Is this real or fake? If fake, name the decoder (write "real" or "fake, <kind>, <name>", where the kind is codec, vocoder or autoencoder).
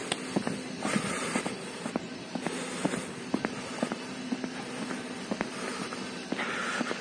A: real